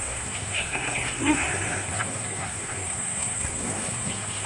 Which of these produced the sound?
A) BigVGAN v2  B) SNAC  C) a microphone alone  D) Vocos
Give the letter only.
B